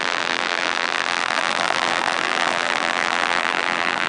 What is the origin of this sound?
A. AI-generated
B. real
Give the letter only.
A